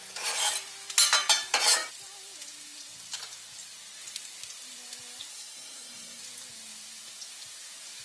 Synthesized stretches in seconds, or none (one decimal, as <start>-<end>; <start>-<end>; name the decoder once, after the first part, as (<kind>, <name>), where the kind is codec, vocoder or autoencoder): 5.3-6.2 (codec, SNAC)